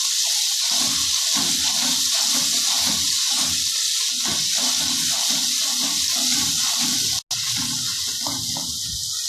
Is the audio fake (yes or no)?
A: no